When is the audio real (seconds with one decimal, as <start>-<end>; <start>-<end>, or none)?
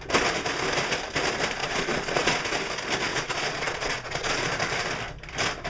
0.0-1.6; 2.4-3.1; 4.5-5.7